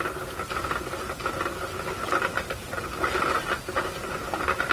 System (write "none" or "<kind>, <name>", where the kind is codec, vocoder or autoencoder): none